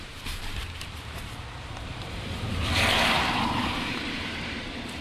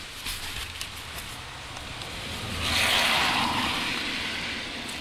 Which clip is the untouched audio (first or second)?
second